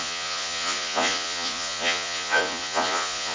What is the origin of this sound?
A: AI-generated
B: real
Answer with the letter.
A